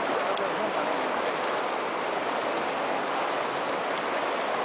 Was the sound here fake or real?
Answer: real